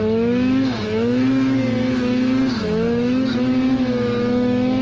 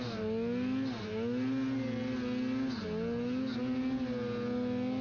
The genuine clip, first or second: second